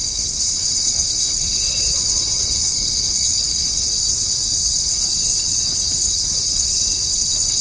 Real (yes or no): no